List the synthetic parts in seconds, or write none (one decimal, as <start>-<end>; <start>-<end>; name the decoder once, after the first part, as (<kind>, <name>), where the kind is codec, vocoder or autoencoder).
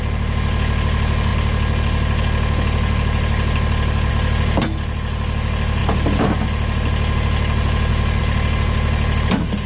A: none